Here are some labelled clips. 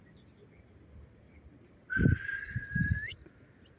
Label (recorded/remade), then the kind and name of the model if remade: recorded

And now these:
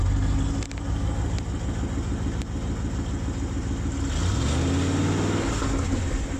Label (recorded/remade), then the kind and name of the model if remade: recorded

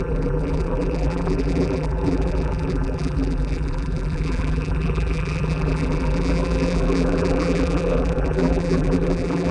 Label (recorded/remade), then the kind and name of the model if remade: remade, vocoder, BigVGAN v2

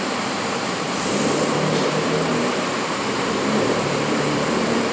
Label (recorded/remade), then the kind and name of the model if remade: remade, vocoder, BigVGAN v2